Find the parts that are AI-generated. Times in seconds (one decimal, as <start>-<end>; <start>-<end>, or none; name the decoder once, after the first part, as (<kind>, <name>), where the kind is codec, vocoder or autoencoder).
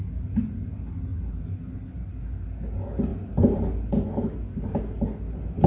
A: none